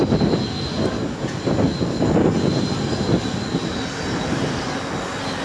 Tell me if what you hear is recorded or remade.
recorded